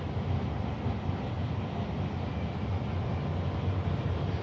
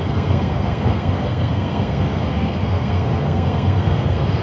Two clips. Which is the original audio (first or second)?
first